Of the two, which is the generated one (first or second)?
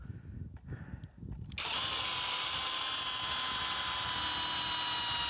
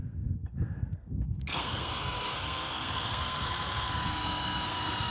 second